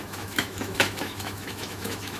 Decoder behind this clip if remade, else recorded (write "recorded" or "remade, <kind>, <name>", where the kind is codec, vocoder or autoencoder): remade, autoencoder, DAC-VAE